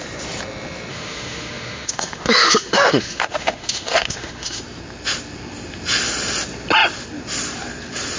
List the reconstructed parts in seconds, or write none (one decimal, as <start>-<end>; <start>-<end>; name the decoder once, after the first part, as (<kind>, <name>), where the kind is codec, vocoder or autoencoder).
0.9-4.6 (autoencoder, DAC-VAE)